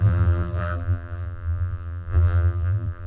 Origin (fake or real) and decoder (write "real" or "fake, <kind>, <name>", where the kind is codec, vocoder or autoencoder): fake, vocoder, BigVGAN v2